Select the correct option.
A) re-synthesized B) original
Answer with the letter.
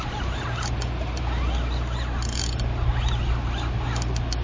B